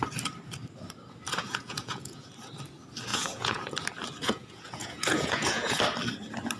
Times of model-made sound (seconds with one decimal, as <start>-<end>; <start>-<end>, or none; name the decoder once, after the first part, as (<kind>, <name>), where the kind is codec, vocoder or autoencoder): 1.4-2.3 (vocoder, Vocos); 3.1-3.6; 4.2-5.8